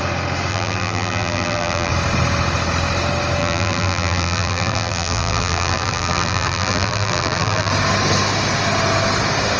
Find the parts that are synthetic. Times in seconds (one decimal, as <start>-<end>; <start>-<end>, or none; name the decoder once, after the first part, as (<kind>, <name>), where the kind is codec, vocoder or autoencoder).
0.5-1.9 (vocoder, BigVGAN v2); 3.4-7.7